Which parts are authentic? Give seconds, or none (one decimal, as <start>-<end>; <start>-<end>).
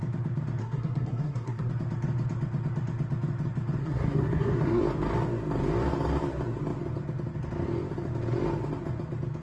0.0-0.6; 1.7-3.8; 4.8-9.4